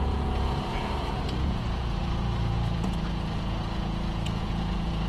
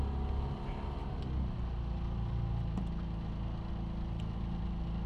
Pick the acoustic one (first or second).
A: second